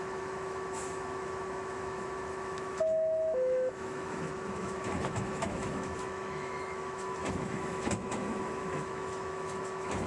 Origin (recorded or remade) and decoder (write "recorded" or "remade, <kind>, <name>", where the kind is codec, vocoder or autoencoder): remade, autoencoder, DAC-VAE